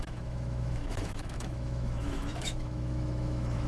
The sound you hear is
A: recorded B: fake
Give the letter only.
B